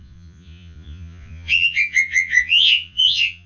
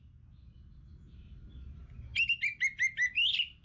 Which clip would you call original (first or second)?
second